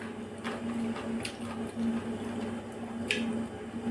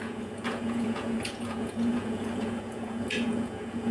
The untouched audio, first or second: first